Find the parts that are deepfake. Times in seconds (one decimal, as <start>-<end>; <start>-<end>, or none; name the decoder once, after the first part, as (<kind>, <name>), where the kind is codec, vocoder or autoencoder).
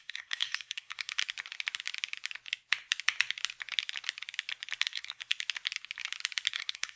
0.0-1.2 (codec, SNAC); 4.8-5.2; 6.5-7.0